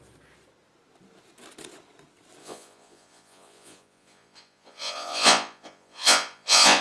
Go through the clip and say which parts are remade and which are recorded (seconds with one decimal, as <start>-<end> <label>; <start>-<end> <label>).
0.0-2.4 recorded; 2.4-6.8 remade